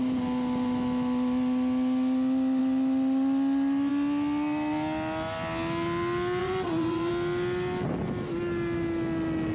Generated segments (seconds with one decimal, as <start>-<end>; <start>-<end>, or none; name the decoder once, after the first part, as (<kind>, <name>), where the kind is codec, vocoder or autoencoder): 6.4-7.1 (vocoder, Vocos)